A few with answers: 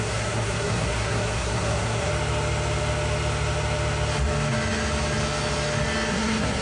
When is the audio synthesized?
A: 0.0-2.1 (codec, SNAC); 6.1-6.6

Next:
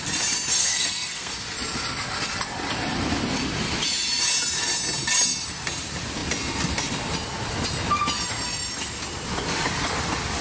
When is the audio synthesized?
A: 0.6-1.3 (codec, SNAC)